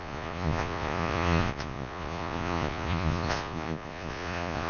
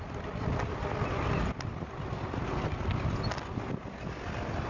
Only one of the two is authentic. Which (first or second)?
second